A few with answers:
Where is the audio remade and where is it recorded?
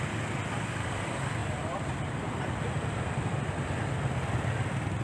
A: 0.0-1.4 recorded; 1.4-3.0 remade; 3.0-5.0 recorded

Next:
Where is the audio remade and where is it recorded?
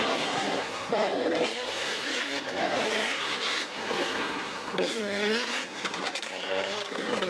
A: 0.0-7.3 remade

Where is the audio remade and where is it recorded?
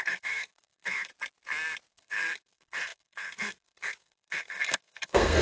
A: 0.0-1.1 remade; 1.1-1.9 recorded; 1.9-5.4 remade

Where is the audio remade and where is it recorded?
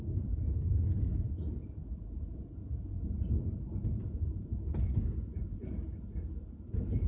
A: 0.0-7.1 recorded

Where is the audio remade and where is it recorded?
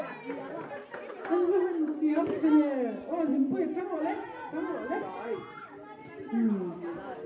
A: 0.0-7.3 recorded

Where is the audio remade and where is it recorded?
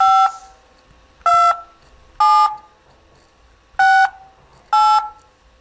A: 0.0-5.6 recorded